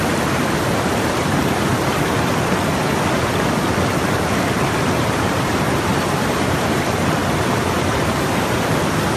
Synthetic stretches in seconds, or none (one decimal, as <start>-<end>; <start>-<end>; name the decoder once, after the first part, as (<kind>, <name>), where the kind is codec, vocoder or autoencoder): 0.0-1.7 (vocoder, BigVGAN v2); 5.0-7.2; 7.8-9.2